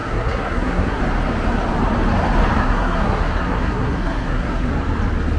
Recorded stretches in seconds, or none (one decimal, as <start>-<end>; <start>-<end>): 1.0-2.6; 4.7-5.4

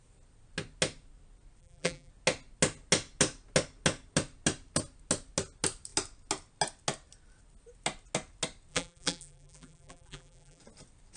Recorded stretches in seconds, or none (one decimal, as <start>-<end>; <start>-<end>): 0.0-1.6; 2.1-8.7; 10.6-11.2

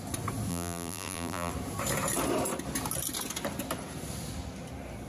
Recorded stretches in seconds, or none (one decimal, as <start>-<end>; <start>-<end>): 0.0-0.5; 1.5-5.1

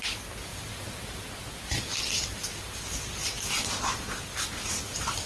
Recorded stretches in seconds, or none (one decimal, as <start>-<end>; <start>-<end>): 0.0-0.5; 1.1-5.3

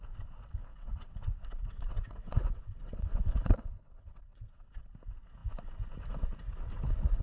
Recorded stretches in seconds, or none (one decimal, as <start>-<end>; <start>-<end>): 0.0-0.7; 4.8-7.2